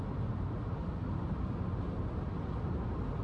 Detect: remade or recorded recorded